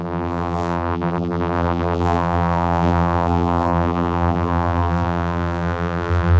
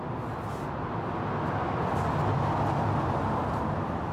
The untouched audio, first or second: second